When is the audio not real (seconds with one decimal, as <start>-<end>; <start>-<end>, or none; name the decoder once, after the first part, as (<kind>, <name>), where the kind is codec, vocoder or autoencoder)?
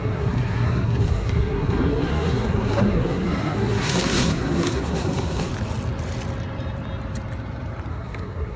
0.0-5.5 (codec, SNAC); 7.9-8.6